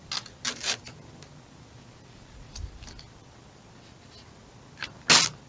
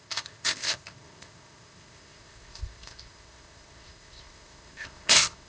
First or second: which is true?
first